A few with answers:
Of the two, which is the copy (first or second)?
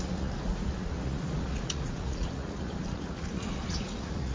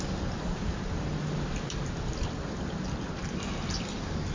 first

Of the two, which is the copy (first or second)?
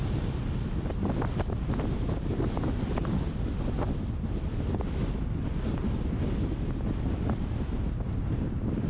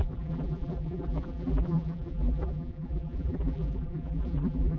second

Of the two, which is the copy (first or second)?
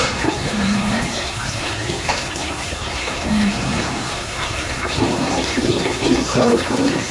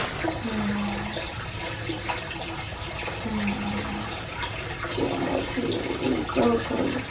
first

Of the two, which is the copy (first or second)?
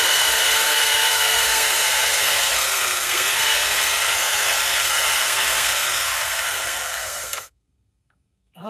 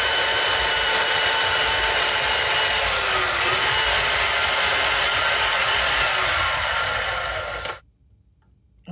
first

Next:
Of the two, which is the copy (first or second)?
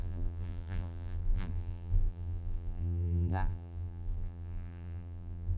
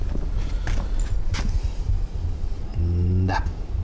first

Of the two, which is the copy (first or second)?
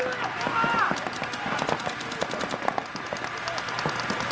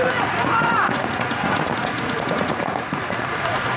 second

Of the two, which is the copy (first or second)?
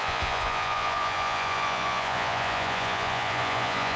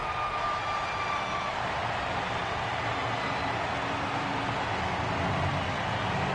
first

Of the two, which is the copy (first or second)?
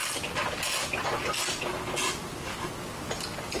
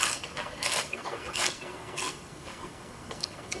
second